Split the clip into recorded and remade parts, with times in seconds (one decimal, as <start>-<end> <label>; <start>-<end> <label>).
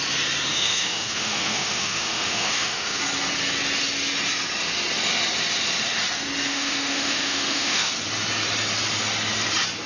0.0-0.5 recorded; 0.5-3.0 remade; 3.0-6.5 recorded; 6.5-7.9 remade; 7.9-9.9 recorded